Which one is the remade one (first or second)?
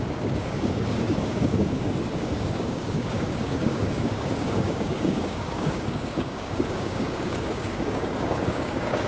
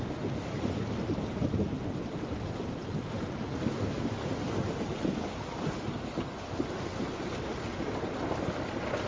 first